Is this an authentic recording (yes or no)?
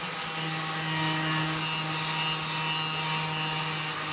yes